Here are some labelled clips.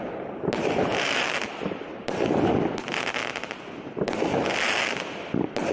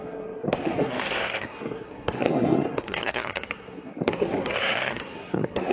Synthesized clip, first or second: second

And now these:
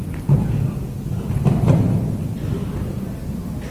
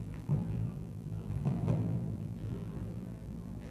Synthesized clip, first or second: second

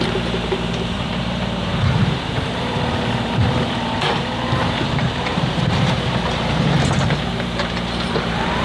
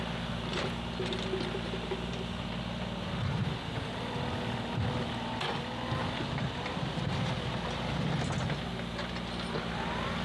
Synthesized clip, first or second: first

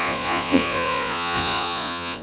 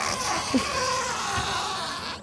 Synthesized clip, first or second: first